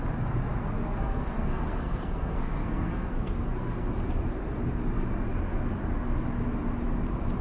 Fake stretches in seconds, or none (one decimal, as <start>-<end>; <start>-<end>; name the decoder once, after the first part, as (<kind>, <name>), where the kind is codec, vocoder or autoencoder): 0.6-3.9 (codec, SNAC)